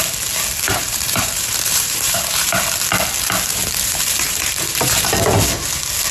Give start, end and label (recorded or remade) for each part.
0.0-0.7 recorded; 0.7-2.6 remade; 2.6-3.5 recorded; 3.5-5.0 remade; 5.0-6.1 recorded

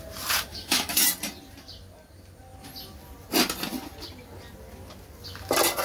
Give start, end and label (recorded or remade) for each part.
0.0-0.5 recorded; 0.5-1.0 remade; 1.0-5.8 recorded

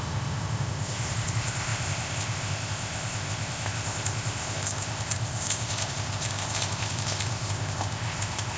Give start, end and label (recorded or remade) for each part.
0.0-8.6 remade

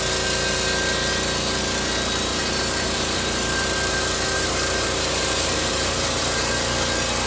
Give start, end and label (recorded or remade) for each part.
0.0-2.3 recorded; 2.3-6.5 remade; 6.5-7.3 recorded

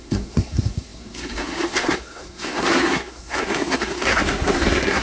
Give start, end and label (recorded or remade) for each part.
0.0-5.0 remade

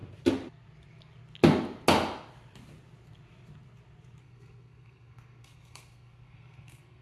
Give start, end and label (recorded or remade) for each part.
0.0-4.2 recorded; 4.2-7.0 remade

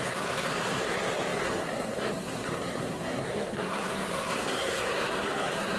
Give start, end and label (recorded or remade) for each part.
0.0-5.8 remade

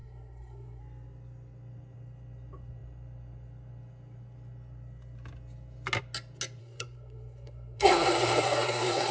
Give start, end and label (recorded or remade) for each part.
0.0-0.8 remade; 0.8-6.6 recorded; 6.6-9.1 remade